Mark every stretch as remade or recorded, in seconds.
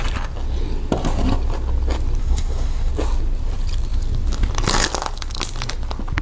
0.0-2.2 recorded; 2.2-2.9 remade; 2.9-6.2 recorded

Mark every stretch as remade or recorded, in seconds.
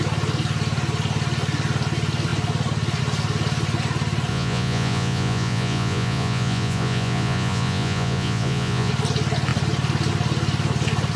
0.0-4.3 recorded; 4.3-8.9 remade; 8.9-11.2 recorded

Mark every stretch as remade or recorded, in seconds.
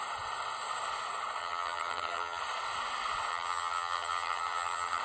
0.0-1.4 recorded; 1.4-2.4 remade; 2.4-3.3 recorded; 3.3-5.0 remade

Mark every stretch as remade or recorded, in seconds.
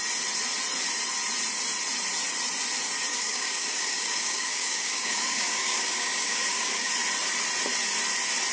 0.0-3.1 recorded; 3.1-6.9 remade; 6.9-8.5 recorded